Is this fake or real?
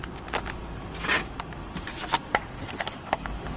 real